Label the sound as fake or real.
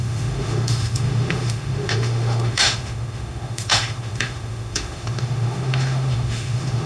fake